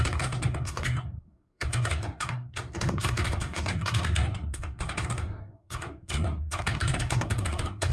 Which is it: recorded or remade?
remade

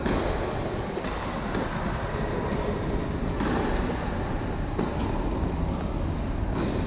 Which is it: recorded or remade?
recorded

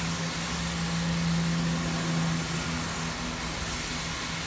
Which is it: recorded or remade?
recorded